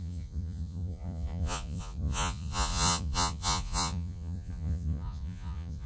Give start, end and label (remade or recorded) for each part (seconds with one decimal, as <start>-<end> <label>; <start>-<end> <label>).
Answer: 0.0-5.9 remade